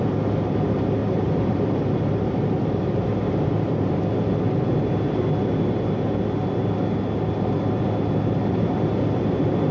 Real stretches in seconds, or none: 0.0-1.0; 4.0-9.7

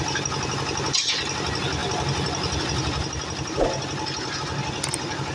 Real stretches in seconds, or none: 0.0-5.3

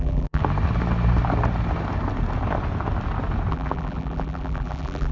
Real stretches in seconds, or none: 0.4-3.5

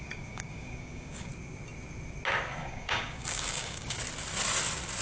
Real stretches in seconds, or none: 1.3-2.6; 4.0-5.0

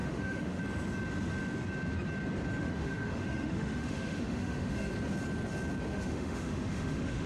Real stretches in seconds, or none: 0.6-2.6; 4.9-5.9

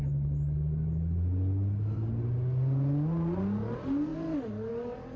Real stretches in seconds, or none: 0.0-5.2

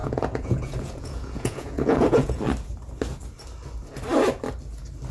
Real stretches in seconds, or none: 2.4-5.1